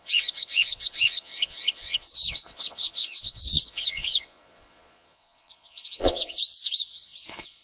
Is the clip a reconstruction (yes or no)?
yes